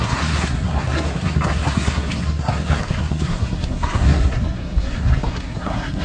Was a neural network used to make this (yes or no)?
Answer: yes